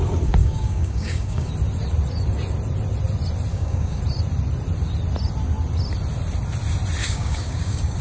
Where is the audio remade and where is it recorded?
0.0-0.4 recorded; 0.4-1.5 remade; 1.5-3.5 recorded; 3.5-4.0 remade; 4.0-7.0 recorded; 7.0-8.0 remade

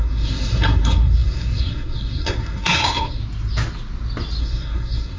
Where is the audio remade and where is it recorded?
0.0-3.2 remade; 3.2-4.4 recorded; 4.4-5.2 remade